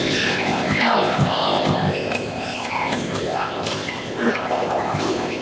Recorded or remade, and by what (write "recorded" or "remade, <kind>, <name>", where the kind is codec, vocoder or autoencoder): remade, codec, ZipCodec